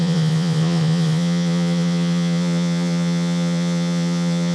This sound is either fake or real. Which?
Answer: fake